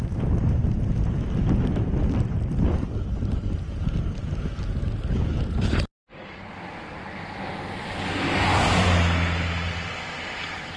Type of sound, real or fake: real